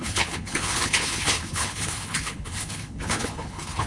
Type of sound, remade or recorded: remade